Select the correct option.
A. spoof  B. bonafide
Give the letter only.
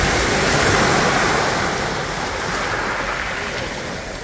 B